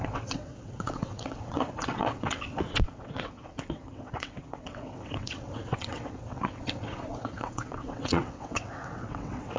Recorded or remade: remade